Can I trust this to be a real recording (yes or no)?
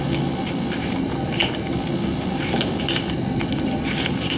yes